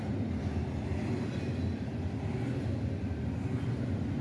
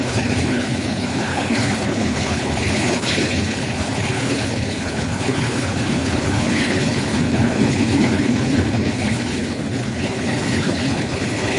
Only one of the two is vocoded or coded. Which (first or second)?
second